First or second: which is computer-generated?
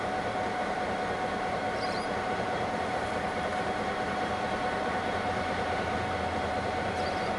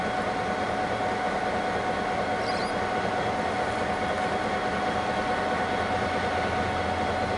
first